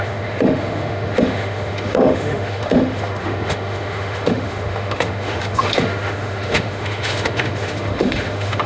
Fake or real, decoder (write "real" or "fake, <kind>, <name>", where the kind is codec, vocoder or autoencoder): fake, autoencoder, DAC-VAE